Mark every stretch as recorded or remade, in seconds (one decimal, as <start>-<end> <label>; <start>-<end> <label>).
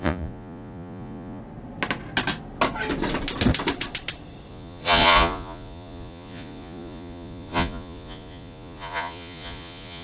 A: 0.0-1.4 remade; 1.4-4.5 recorded; 4.5-10.0 remade